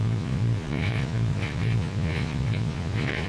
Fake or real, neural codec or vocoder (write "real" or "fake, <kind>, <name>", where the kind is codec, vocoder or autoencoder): fake, vocoder, Vocos